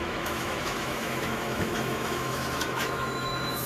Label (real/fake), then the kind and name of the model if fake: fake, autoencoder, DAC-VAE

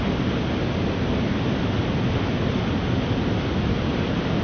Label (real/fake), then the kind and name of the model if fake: real